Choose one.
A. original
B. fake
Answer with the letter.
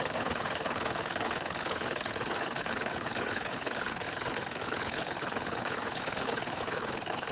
B